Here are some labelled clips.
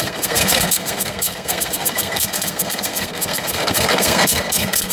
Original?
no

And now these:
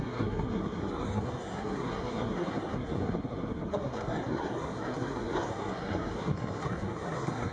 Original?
no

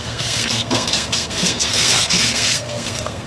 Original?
no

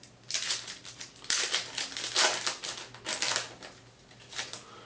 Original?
yes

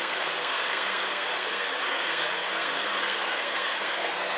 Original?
no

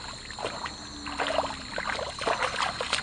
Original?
yes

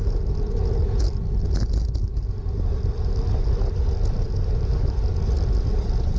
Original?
yes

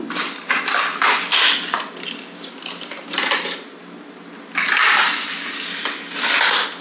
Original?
yes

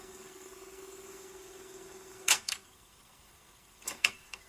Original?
no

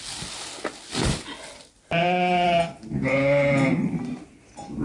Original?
yes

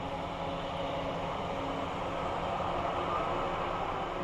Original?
yes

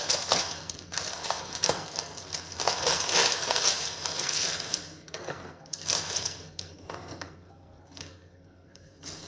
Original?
no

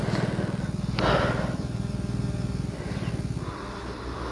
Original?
yes